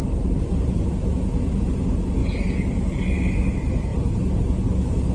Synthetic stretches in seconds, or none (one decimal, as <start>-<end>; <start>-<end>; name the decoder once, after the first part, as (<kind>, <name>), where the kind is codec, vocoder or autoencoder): none

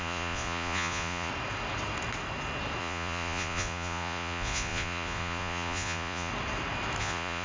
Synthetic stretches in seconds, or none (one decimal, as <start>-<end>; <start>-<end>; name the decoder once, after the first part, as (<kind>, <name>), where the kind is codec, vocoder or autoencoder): 0.0-1.3 (vocoder, Vocos); 2.8-6.3; 7.0-7.4

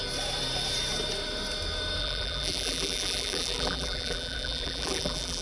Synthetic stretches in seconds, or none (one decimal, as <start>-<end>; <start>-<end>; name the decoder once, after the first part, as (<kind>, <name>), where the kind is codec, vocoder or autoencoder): 2.0-5.4 (vocoder, BigVGAN v2)

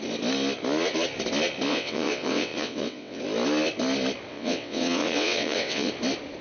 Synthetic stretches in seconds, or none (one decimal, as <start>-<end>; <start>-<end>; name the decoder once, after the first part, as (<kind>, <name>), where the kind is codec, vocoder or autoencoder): 1.7-3.2 (vocoder, WaveNeXt); 4.3-5.9

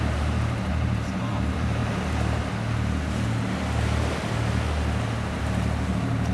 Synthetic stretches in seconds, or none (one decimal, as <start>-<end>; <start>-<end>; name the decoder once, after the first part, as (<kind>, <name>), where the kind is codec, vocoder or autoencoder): 0.0-1.8 (vocoder, BigVGAN v2); 5.4-6.3

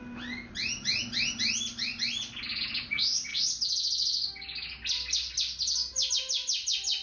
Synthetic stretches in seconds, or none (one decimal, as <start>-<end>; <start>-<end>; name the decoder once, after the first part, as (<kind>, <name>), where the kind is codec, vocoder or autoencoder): none

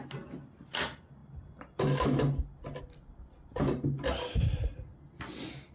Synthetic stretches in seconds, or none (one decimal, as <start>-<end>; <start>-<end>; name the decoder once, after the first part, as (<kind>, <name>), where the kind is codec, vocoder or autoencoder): none